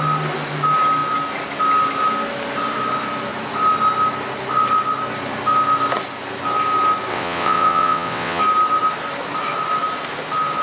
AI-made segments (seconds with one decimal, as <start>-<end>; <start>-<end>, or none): 7.1-8.4